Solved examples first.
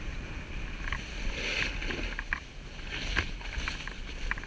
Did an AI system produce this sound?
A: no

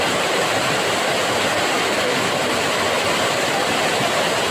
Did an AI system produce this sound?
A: no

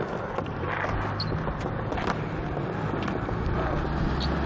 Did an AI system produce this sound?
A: no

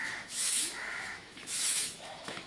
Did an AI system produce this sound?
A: yes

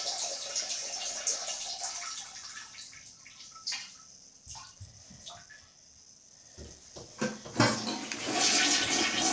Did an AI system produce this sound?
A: no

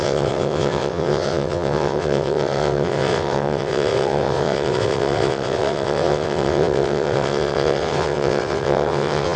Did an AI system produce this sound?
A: yes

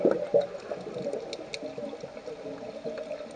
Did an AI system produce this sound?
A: no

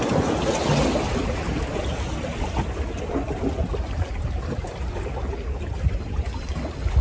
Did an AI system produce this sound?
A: no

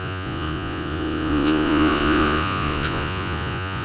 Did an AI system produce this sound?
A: yes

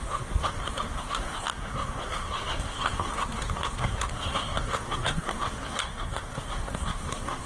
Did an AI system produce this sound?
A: yes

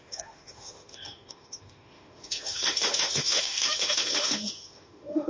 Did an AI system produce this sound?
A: yes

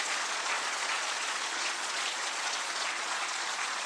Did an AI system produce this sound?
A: yes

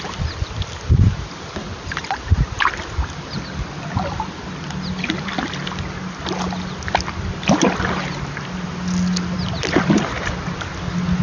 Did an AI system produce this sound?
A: no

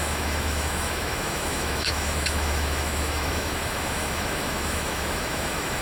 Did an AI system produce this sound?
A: yes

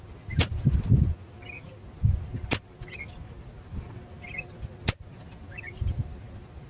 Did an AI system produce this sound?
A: no